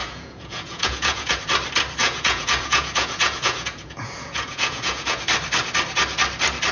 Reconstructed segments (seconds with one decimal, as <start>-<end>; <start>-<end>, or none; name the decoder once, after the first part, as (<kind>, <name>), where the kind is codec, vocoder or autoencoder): 0.0-1.4 (vocoder, Vocos); 2.0-5.2